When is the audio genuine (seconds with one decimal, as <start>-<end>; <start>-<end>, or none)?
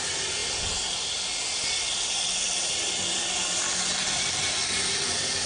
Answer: 0.0-5.5